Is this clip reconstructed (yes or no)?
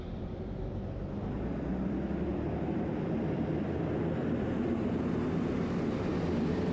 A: yes